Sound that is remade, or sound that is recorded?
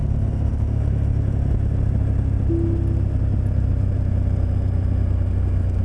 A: recorded